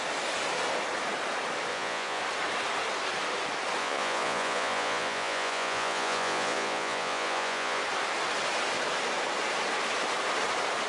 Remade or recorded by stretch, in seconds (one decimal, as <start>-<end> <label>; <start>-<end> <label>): 0.0-1.7 recorded; 1.7-2.2 remade; 2.2-3.8 recorded; 3.8-7.8 remade; 7.8-10.9 recorded